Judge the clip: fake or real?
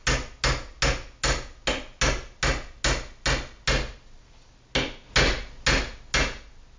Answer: real